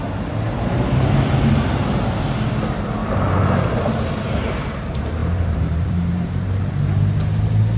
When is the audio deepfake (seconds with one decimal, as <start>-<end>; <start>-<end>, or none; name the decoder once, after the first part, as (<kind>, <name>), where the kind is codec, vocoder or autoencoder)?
3.0-3.6 (vocoder, BigVGAN v2); 5.2-6.7